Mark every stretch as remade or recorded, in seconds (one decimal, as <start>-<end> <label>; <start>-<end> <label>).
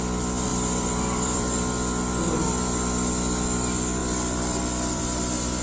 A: 0.0-0.5 recorded; 0.5-2.5 remade; 2.5-4.0 recorded; 4.0-5.0 remade; 5.0-5.6 recorded